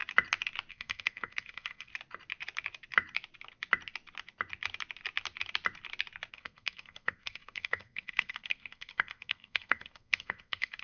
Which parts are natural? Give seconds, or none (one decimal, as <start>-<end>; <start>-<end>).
0.0-0.7; 1.9-6.3